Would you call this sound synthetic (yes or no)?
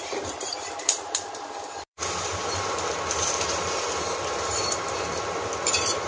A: yes